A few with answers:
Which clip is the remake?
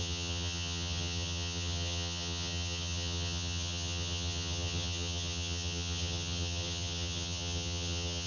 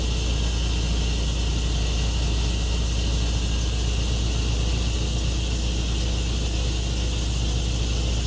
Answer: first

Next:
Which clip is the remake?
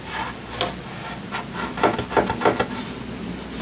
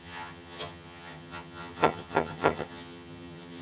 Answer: second